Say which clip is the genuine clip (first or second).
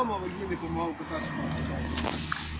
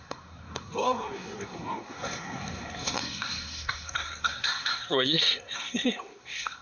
first